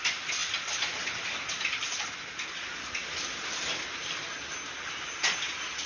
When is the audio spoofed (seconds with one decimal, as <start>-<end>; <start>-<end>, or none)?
none